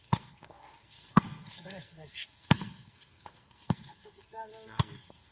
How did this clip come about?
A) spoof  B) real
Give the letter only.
A